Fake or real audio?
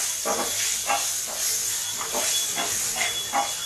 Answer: real